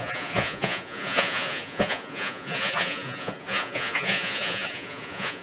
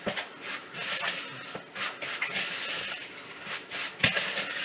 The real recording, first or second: second